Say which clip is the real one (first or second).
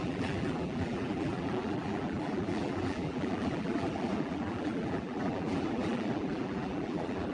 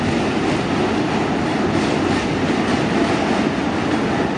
second